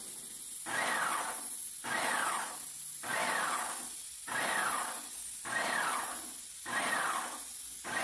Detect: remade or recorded recorded